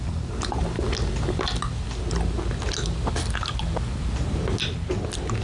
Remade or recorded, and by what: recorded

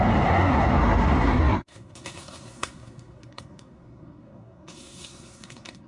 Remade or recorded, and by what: remade, codec, SNAC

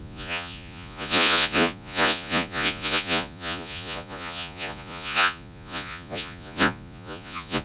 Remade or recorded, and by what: remade, vocoder, Vocos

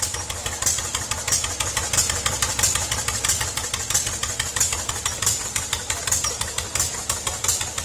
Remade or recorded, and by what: recorded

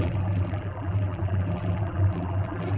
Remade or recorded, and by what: remade, vocoder, BigVGAN v2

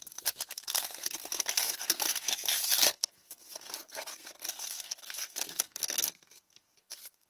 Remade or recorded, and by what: remade, codec, SNAC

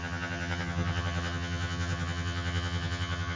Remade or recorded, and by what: remade, vocoder, HiFi-GAN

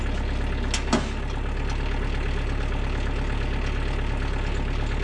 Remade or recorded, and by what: recorded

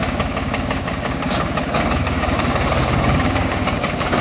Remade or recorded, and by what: remade, codec, DAC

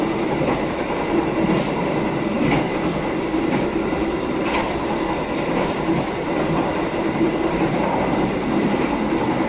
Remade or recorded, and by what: remade, vocoder, BigVGAN v2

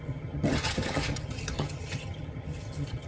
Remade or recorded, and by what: remade, vocoder, HiFi-GAN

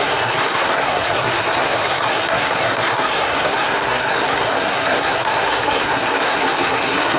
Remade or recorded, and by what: remade, codec, SNAC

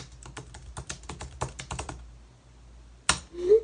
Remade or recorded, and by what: recorded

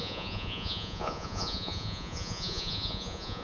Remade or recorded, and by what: remade, vocoder, Vocos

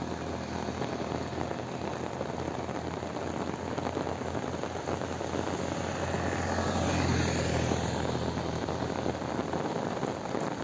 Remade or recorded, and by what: recorded